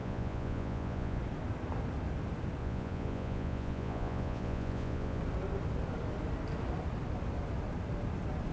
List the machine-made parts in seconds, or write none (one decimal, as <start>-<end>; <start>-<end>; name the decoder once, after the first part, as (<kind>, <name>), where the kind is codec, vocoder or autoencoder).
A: 0.0-1.2 (vocoder, Vocos); 2.6-5.2